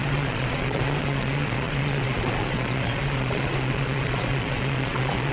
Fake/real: fake